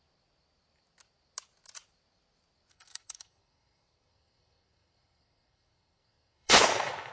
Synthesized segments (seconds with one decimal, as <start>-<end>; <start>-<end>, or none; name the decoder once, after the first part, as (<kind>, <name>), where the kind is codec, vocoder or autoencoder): 2.7-7.1 (codec, SNAC)